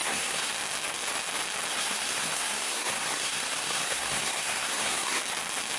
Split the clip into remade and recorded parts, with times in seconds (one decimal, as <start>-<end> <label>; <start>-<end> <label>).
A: 0.0-0.5 remade; 0.5-1.7 recorded; 1.7-5.2 remade; 5.2-5.8 recorded